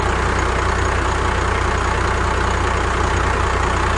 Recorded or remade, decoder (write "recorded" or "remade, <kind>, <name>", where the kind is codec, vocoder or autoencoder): recorded